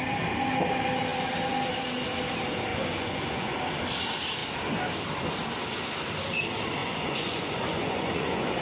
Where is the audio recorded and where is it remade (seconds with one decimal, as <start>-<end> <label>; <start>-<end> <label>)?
0.0-2.7 recorded; 2.7-3.6 remade; 3.6-6.8 recorded; 6.8-8.6 remade

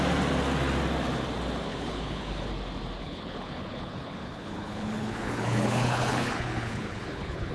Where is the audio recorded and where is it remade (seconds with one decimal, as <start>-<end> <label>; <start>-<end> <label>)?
0.0-1.7 recorded; 1.7-2.5 remade; 2.5-3.0 recorded; 3.0-7.5 remade

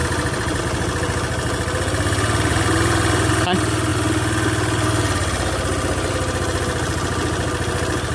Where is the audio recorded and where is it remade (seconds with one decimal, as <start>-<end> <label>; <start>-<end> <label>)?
0.0-0.6 remade; 0.6-2.5 recorded; 2.5-3.3 remade; 3.3-8.1 recorded